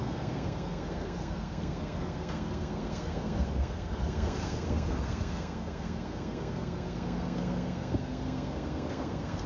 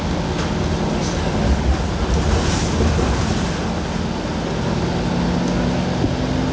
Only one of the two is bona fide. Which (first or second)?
second